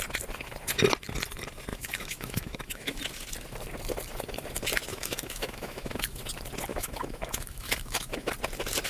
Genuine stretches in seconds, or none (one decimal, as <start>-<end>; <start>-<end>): 0.0-1.7; 3.0-4.9; 6.2-6.7; 8.3-8.9